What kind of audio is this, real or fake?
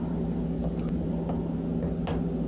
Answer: real